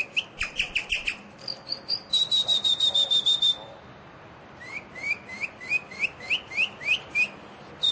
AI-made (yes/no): yes